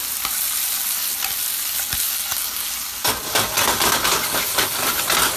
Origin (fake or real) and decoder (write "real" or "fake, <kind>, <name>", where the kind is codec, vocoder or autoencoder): real